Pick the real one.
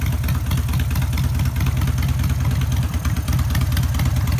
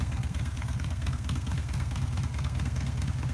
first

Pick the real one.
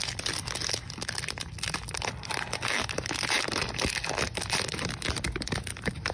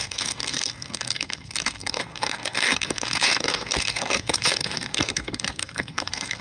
first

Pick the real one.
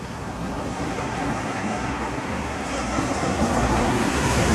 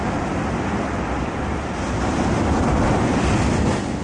second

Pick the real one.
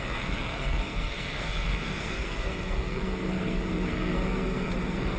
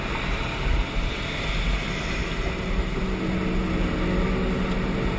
second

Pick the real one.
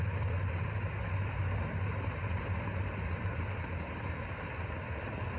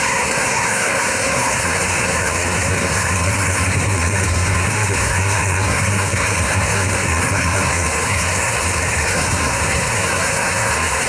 first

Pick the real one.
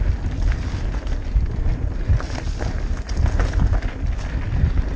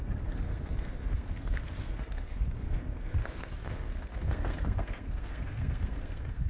first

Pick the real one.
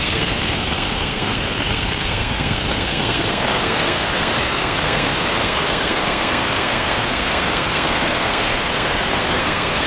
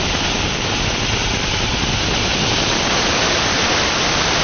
second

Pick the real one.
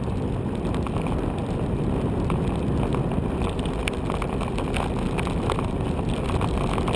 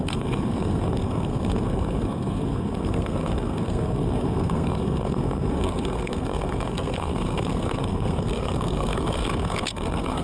first